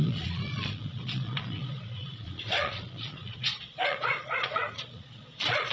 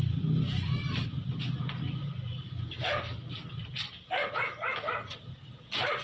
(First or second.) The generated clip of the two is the first